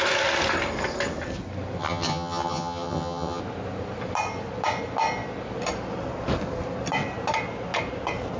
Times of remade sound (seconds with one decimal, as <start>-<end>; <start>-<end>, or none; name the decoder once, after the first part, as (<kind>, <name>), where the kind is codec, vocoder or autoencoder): 1.8-3.4 (vocoder, HiFi-GAN)

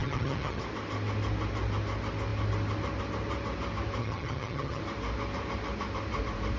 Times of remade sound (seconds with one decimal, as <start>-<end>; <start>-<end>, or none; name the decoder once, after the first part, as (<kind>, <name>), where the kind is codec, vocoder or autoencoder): 0.0-0.6 (vocoder, HiFi-GAN); 4.0-4.8